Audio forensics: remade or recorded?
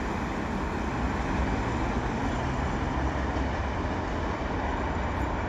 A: recorded